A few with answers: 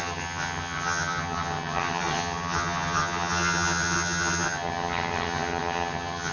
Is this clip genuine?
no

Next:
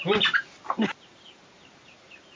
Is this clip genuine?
no